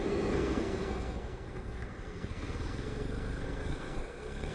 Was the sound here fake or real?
fake